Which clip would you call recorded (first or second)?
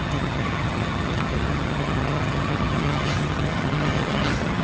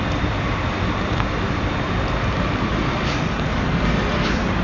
second